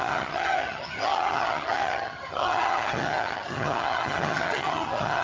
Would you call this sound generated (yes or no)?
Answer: yes